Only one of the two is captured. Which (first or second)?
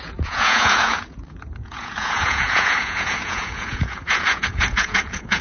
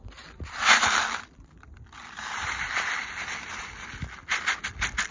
second